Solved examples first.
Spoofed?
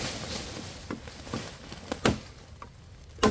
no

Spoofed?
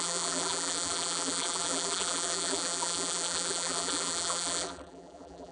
yes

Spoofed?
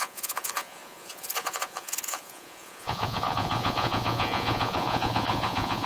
yes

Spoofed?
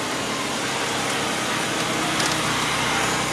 no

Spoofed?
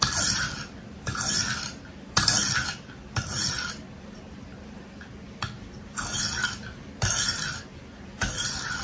no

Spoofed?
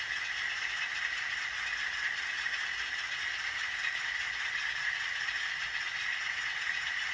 no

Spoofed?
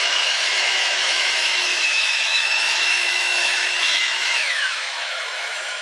yes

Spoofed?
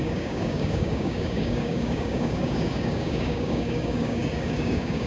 yes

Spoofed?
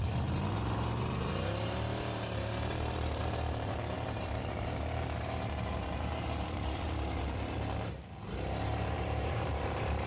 yes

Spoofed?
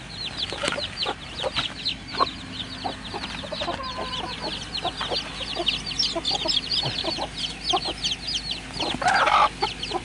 no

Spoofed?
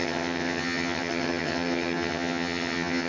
yes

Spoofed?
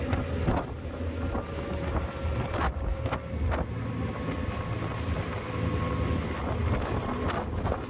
no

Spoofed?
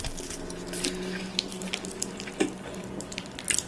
no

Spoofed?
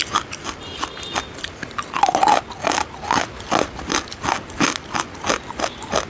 no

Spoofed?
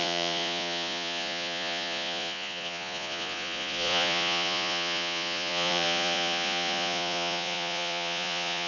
yes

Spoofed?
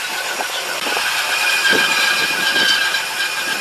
no